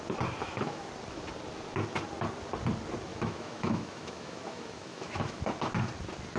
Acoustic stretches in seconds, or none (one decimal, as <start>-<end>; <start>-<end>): 0.0-0.4; 0.9-3.1; 5.4-6.4